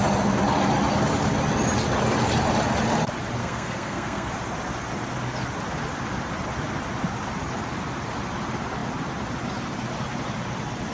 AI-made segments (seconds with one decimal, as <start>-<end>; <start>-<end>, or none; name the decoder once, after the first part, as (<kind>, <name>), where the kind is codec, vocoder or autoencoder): 3.4-4.3 (codec, SNAC)